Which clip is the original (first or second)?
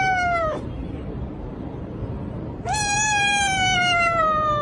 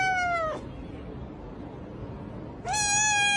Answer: second